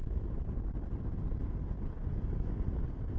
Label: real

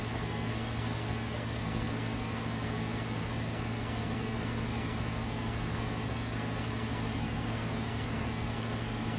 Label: fake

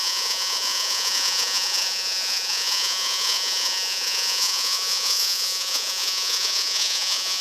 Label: fake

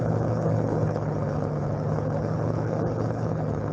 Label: fake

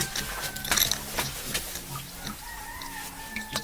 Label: real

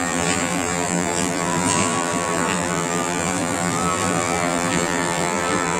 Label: fake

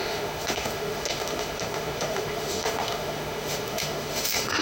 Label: fake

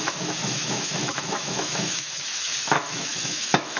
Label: fake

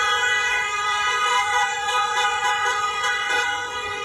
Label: fake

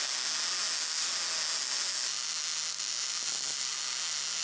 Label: real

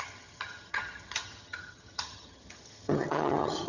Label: fake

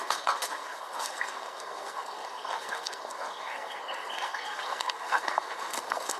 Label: fake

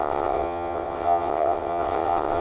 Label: fake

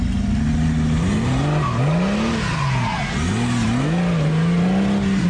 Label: real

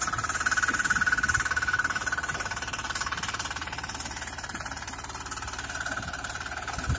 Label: fake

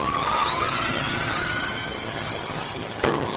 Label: fake